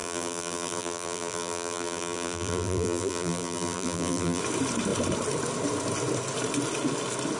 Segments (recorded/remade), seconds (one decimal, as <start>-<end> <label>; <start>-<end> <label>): 0.0-4.4 remade; 4.4-7.4 recorded